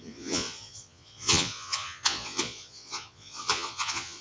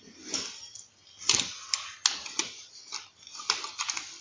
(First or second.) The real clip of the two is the second